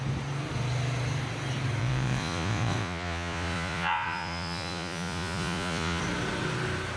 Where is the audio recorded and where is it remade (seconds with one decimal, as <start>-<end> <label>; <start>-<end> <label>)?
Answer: 0.0-1.8 recorded; 1.8-6.0 remade; 6.0-7.0 recorded